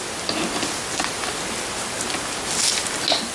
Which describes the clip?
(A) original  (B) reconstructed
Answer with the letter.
A